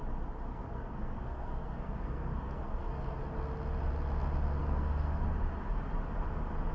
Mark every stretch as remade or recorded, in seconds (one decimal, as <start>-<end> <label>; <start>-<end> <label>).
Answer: 0.0-0.5 recorded; 0.5-3.2 remade; 3.2-4.6 recorded; 4.6-5.2 remade; 5.2-6.7 recorded

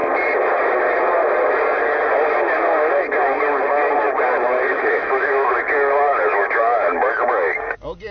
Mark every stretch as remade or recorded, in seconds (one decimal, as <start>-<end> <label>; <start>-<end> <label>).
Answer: 0.0-4.7 recorded; 4.7-5.5 remade; 5.5-8.1 recorded